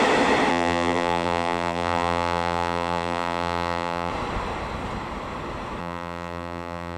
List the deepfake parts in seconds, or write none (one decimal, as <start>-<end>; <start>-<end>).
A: 0.5-4.1; 5.8-7.0